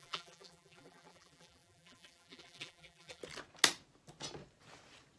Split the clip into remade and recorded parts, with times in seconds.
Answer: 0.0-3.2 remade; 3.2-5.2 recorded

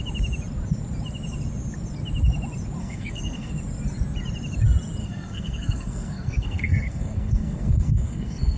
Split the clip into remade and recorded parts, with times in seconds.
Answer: 0.0-2.8 recorded; 2.8-3.5 remade; 3.5-5.0 recorded; 5.0-8.6 remade

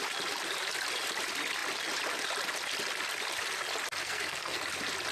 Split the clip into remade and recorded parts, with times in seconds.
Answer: 0.0-4.0 recorded; 4.0-4.6 remade; 4.6-5.1 recorded

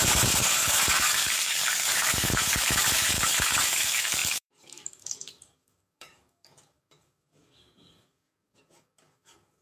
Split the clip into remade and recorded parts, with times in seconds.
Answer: 0.0-9.6 remade

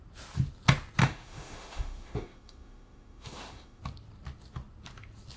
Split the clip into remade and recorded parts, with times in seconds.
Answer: 0.0-1.0 recorded; 1.0-3.8 remade; 3.8-5.4 recorded